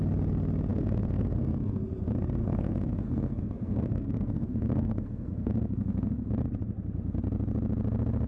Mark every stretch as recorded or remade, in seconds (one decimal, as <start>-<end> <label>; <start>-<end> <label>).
0.0-0.7 recorded; 0.7-1.8 remade; 1.8-2.4 recorded; 2.4-6.3 remade; 6.3-8.3 recorded